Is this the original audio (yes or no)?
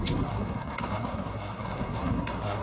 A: no